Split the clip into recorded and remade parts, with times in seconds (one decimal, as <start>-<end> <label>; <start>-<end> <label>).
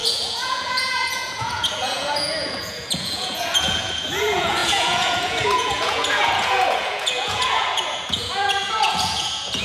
0.0-9.6 remade